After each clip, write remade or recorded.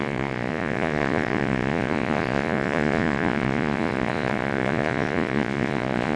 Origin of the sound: remade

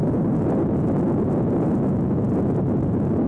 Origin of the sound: recorded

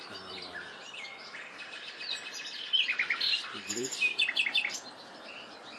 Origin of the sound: remade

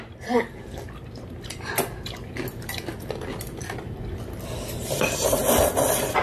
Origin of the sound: recorded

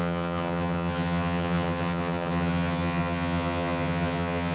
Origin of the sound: remade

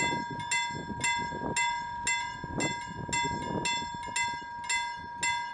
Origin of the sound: recorded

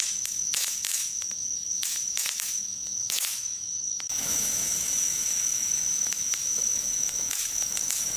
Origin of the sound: remade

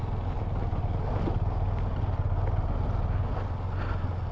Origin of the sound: recorded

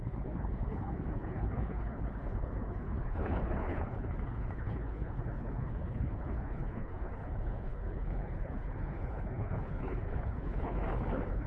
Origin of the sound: remade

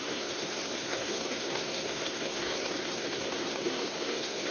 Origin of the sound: remade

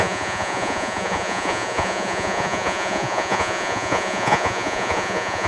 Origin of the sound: remade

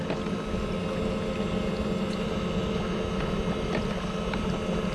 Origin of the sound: recorded